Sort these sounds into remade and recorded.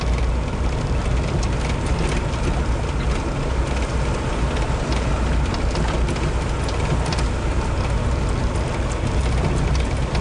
recorded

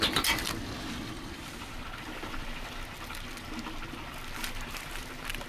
recorded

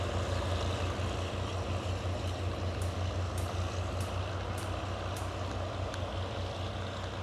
recorded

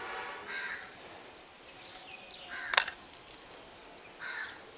recorded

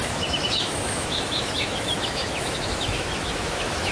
remade